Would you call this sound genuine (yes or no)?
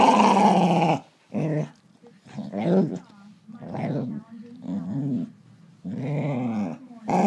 yes